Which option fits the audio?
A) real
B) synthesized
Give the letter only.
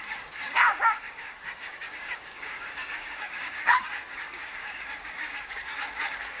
B